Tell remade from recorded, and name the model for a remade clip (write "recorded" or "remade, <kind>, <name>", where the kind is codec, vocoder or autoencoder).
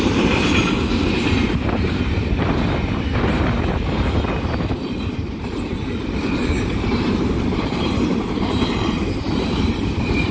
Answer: remade, vocoder, BigVGAN v2